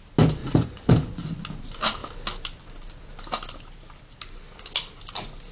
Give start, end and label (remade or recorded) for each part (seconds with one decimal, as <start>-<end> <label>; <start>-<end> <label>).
0.0-0.4 recorded; 0.4-1.2 remade; 1.2-5.5 recorded